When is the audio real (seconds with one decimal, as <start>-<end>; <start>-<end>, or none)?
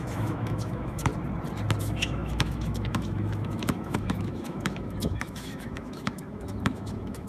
1.1-1.8